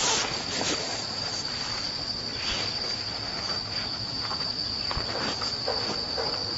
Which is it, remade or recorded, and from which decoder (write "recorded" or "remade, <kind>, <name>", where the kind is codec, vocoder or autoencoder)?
recorded